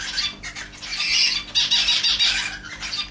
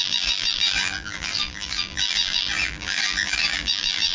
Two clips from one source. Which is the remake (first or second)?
second